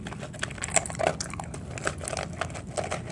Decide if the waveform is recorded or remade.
recorded